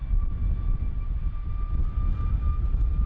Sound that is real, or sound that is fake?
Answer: real